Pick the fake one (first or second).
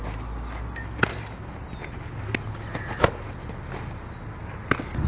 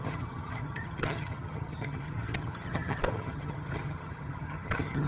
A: second